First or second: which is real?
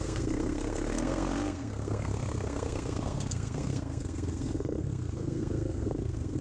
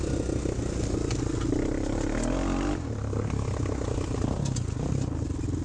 second